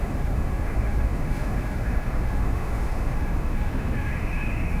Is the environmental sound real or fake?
fake